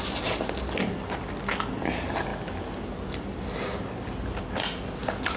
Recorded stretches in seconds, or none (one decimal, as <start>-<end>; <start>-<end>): 0.0-5.4